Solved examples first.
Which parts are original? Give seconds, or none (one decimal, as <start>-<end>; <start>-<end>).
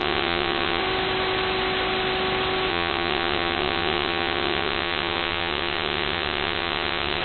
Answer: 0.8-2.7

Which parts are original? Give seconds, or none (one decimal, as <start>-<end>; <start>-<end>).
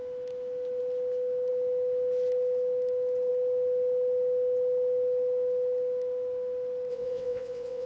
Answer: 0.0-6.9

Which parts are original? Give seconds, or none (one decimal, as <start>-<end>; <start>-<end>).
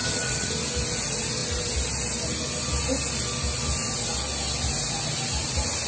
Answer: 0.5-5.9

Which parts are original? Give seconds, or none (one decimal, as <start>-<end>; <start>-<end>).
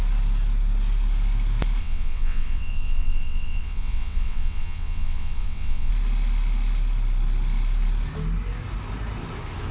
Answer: 0.0-1.8; 5.9-9.7